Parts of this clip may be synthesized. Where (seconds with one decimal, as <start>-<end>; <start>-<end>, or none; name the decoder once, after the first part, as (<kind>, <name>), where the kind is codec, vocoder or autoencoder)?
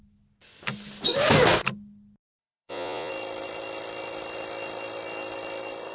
2.4-3.1 (vocoder, Vocos)